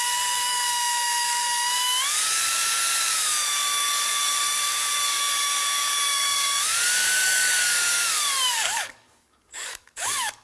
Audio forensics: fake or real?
fake